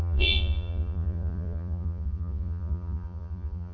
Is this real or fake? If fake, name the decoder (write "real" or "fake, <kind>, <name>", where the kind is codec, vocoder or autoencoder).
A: fake, vocoder, Vocos